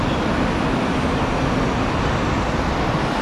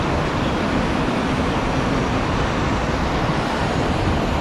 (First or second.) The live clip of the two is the first